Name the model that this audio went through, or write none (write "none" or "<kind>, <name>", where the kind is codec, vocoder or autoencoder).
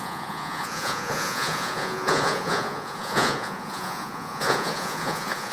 vocoder, Vocos